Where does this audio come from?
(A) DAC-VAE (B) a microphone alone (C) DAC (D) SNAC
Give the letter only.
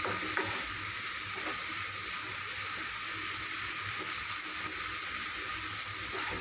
B